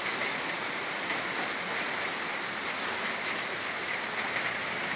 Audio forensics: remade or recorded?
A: recorded